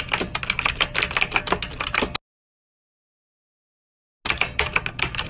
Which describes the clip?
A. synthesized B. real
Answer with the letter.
B